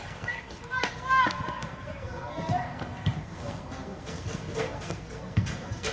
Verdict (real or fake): fake